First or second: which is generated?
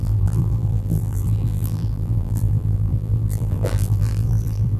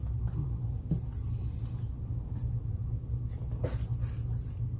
first